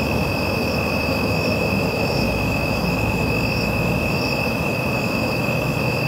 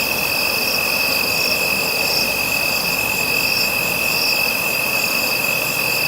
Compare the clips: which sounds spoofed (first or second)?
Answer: first